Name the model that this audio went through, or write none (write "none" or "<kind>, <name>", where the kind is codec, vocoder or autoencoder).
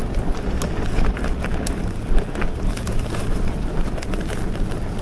none